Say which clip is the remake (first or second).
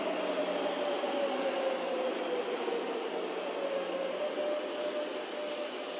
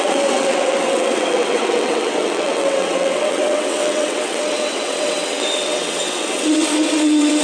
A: second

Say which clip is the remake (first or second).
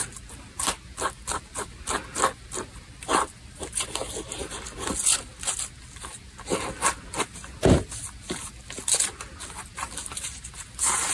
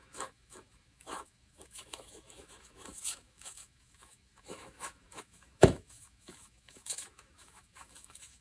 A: second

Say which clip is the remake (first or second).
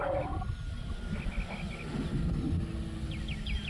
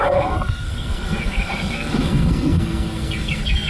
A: second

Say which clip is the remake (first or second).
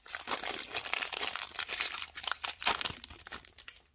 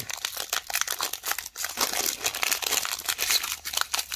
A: first